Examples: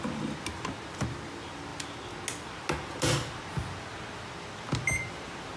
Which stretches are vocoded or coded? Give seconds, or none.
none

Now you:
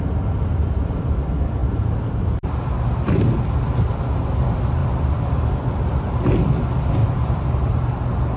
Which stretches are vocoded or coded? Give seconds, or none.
0.5-1.1 (vocoder, BigVGAN v2); 1.6-2.5; 4.8-6.1; 7.0-7.7

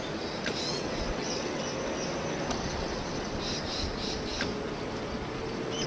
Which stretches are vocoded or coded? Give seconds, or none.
0.7-1.6 (vocoder, WaveNeXt)

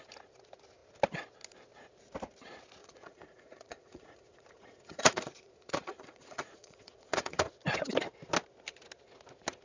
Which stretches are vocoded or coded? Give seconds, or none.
2.8-7.5 (vocoder, Vocos)

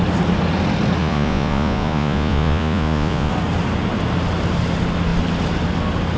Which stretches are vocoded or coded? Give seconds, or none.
1.0-3.3 (vocoder, Vocos)

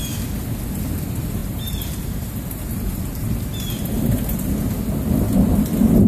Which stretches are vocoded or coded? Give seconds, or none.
1.4-3.7 (vocoder, BigVGAN v2)